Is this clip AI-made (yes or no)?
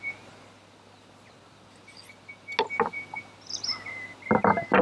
no